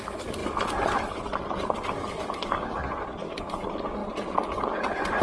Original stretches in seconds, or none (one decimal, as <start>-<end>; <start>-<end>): 0.0-5.2